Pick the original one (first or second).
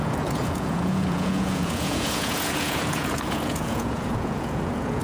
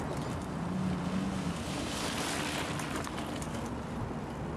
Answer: second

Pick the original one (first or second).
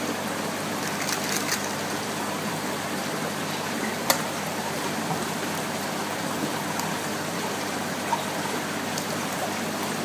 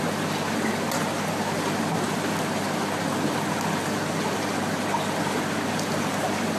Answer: second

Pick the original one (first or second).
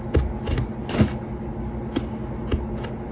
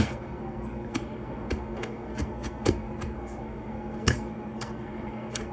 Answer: first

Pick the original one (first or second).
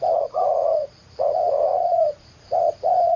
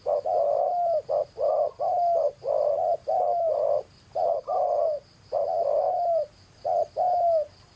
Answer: second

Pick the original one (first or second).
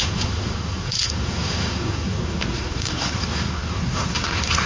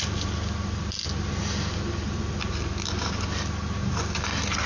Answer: second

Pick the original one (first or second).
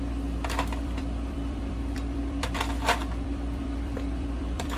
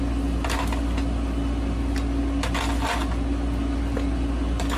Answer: second